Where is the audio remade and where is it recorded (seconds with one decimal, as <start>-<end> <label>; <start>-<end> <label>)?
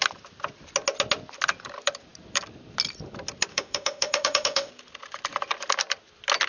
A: 0.0-3.5 recorded; 3.5-4.7 remade; 4.7-6.5 recorded